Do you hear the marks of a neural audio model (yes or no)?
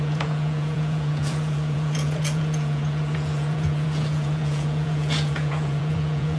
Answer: yes